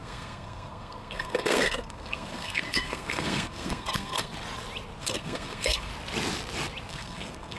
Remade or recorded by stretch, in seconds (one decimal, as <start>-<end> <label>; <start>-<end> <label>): 0.0-4.3 remade; 4.3-5.0 recorded; 5.0-5.9 remade; 5.9-6.9 recorded; 6.9-7.6 remade